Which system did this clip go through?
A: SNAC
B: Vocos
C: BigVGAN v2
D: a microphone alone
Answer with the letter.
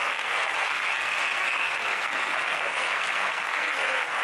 A